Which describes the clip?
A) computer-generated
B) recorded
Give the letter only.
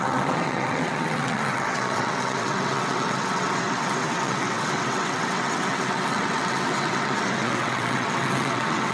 A